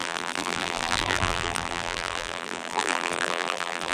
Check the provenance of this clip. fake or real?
fake